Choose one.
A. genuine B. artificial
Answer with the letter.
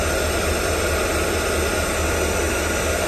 A